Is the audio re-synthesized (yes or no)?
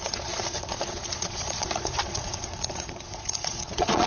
yes